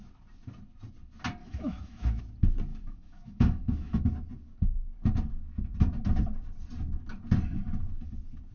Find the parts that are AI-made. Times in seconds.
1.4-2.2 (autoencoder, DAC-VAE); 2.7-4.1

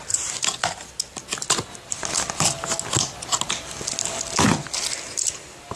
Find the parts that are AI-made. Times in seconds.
none

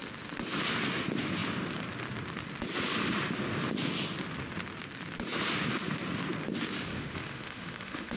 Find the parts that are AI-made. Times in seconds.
6.9-8.2 (autoencoder, DAC-VAE)

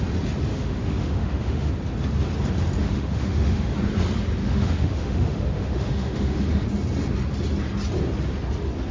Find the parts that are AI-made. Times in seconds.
0.5-1.7 (autoencoder, DAC-VAE); 2.8-3.7; 4.4-6.4

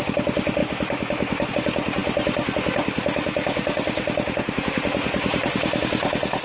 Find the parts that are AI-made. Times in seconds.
0.6-1.5 (autoencoder, DAC-VAE)